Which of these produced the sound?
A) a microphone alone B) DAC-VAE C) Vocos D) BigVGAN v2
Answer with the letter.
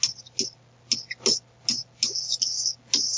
A